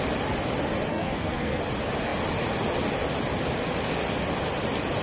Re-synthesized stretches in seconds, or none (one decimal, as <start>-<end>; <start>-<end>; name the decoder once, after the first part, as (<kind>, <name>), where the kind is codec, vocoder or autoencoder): 0.9-1.6 (codec, SNAC)